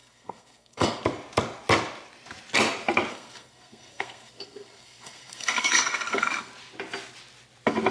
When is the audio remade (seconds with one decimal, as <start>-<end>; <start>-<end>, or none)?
0.0-1.0; 3.1-6.5